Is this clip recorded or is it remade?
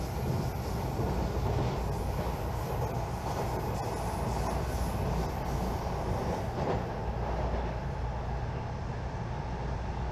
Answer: recorded